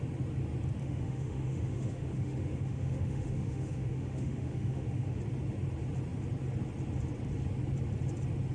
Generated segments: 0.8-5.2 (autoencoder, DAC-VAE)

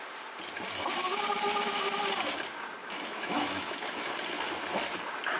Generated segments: 2.8-4.1 (autoencoder, DAC-VAE)

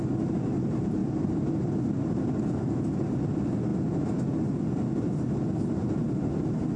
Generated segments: none

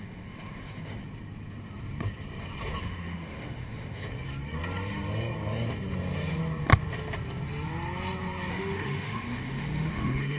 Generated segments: 0.0-1.0 (autoencoder, DAC-VAE); 2.8-4.0; 8.5-10.4

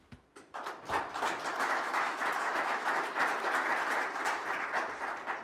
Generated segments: 1.5-3.0 (autoencoder, DAC-VAE)

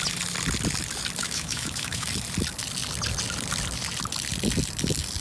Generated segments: 1.2-2.1 (autoencoder, DAC-VAE)

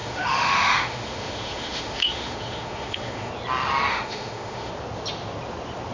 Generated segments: 0.0-3.3 (autoencoder, DAC-VAE); 3.9-4.7

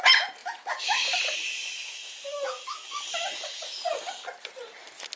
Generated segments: 0.4-1.2 (autoencoder, DAC-VAE); 1.7-3.8